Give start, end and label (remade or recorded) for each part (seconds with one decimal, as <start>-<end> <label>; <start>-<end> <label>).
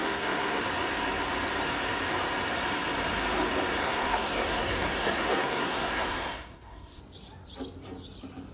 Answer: 0.0-0.6 remade; 0.6-3.8 recorded; 3.8-7.0 remade; 7.0-8.5 recorded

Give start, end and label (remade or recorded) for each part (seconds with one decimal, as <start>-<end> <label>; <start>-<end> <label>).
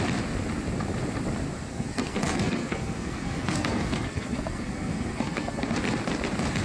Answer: 0.0-1.7 recorded; 1.7-5.7 remade; 5.7-6.6 recorded